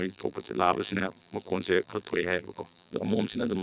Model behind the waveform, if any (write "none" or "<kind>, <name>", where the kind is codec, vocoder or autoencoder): vocoder, BigVGAN v2